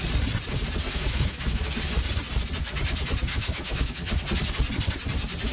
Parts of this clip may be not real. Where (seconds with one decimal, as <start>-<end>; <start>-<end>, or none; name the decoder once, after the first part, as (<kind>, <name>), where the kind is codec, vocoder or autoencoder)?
0.9-1.7 (autoencoder, DAC-VAE); 3.3-3.9